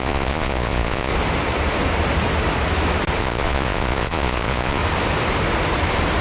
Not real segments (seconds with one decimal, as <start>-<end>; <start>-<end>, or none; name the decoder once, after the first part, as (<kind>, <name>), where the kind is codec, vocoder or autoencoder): 0.0-1.1 (vocoder, Vocos); 3.2-4.8